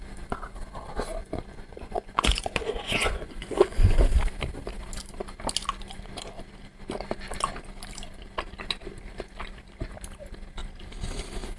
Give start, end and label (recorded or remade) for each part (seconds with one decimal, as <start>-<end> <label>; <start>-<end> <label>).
0.0-1.2 recorded; 1.2-4.0 remade; 4.0-11.6 recorded